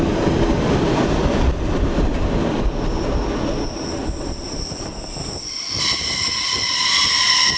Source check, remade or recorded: recorded